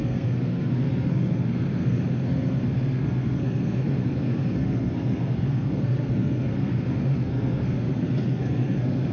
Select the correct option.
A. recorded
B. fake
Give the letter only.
B